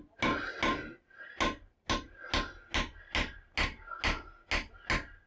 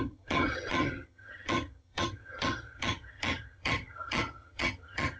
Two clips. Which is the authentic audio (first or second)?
first